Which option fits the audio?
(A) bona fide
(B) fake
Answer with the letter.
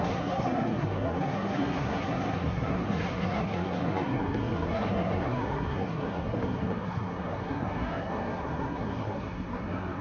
B